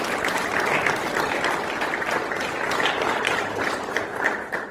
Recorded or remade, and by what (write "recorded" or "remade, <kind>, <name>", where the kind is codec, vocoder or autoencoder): recorded